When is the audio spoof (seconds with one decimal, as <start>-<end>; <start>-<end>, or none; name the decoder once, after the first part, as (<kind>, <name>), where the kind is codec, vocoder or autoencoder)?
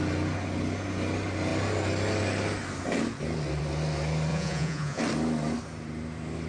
4.3-5.0 (vocoder, Vocos)